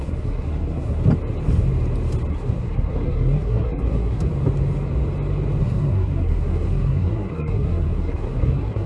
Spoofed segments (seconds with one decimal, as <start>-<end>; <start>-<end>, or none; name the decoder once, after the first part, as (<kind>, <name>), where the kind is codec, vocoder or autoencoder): 0.0-1.0 (codec, SNAC); 2.3-4.3; 5.6-8.9